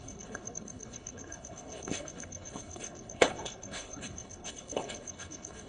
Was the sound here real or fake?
fake